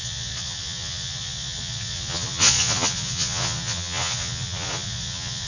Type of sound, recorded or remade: remade